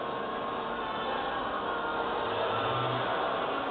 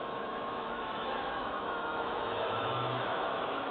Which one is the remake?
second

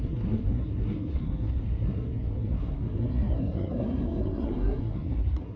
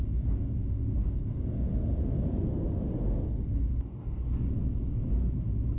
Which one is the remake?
first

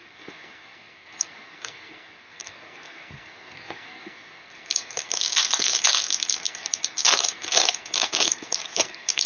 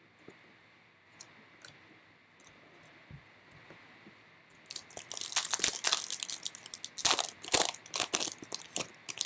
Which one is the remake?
first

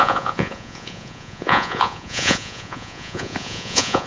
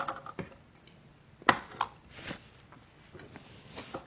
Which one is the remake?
first